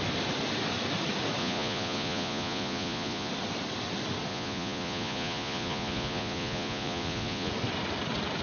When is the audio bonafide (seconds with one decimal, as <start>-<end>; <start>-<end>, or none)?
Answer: 0.0-1.4; 3.3-4.3; 7.5-8.4